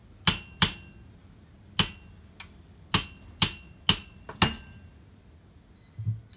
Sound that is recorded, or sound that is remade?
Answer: recorded